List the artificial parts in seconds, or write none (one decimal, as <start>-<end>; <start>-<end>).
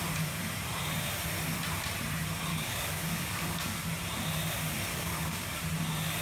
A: 2.5-3.9; 4.9-5.6